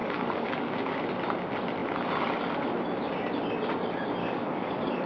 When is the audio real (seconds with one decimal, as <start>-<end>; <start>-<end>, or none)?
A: 0.7-4.2